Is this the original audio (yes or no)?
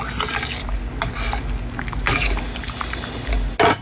yes